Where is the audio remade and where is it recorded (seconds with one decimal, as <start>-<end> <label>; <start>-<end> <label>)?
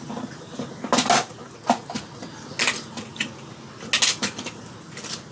0.0-5.3 recorded